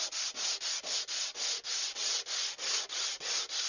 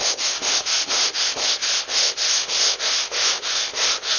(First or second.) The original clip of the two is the first